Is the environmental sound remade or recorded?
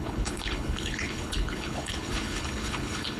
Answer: remade